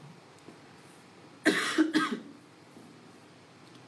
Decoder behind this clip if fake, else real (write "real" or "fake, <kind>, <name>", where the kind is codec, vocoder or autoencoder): fake, vocoder, BigVGAN v2